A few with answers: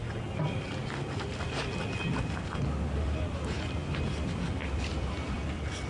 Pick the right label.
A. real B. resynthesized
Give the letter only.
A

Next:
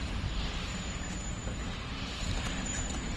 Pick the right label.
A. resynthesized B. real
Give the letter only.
A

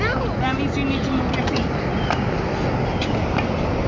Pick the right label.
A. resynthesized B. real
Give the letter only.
B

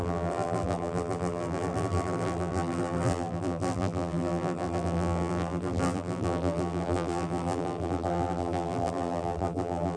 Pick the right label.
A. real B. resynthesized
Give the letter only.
B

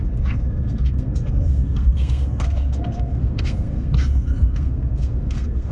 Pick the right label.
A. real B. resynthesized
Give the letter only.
B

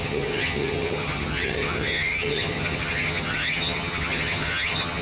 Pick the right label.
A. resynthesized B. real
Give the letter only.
A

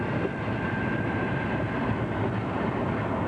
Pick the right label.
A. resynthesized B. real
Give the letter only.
B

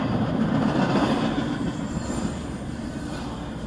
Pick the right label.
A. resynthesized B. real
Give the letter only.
B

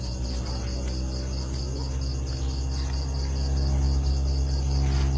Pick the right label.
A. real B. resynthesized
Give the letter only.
A